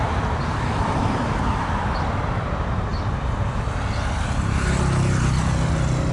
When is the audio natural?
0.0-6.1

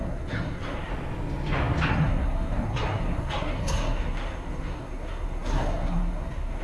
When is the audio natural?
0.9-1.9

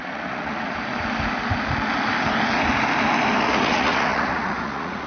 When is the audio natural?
0.8-3.4

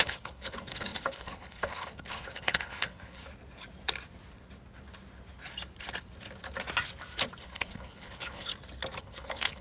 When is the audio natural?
3.2-7.4; 8.5-9.0

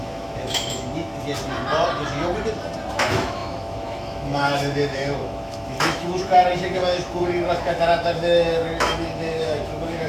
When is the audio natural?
1.1-2.9

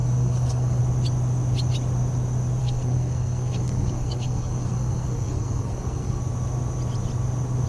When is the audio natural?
0.8-2.6; 6.2-7.7